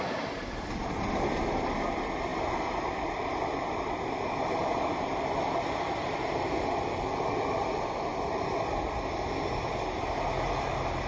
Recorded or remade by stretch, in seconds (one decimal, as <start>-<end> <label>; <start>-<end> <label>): 0.0-2.3 recorded; 2.3-2.9 remade; 2.9-11.1 recorded